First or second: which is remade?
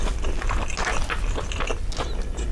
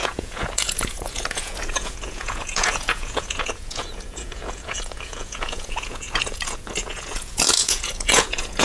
second